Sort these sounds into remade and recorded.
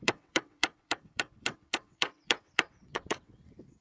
remade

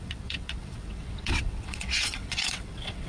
remade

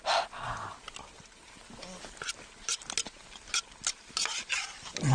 recorded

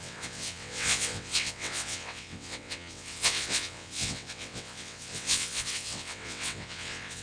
remade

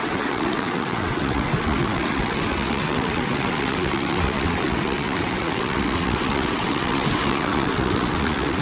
remade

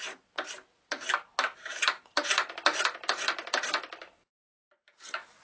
recorded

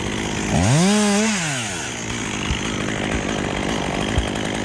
recorded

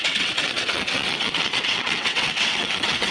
remade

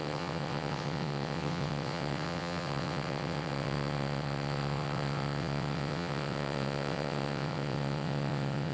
remade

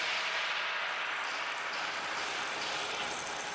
recorded